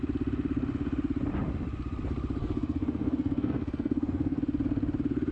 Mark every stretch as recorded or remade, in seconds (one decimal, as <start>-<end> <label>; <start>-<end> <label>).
0.0-2.4 recorded; 2.4-4.4 remade; 4.4-5.3 recorded